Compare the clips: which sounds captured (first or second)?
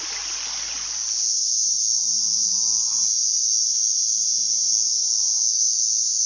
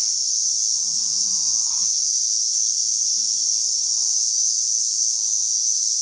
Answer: first